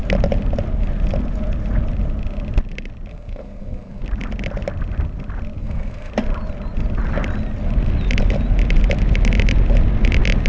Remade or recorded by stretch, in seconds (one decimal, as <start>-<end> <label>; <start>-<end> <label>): 0.0-3.1 recorded; 3.1-4.0 remade; 4.0-5.6 recorded; 5.6-6.1 remade; 6.1-10.5 recorded